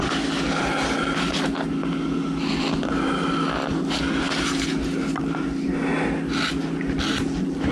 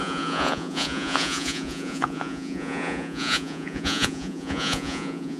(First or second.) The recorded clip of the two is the first